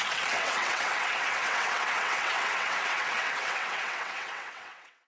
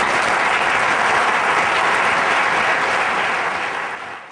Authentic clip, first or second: second